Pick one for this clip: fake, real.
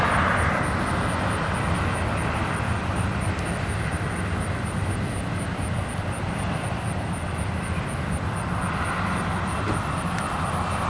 real